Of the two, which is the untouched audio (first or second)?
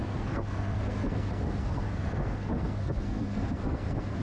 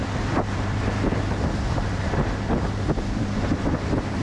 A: second